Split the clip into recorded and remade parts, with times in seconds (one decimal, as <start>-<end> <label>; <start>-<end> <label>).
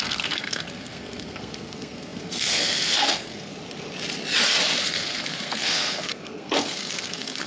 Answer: 0.0-3.5 remade; 3.5-4.8 recorded; 4.8-7.5 remade